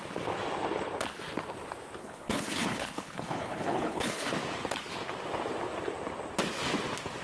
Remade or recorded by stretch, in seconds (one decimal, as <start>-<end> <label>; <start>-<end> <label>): 0.0-2.0 recorded; 2.0-4.3 remade; 4.3-7.2 recorded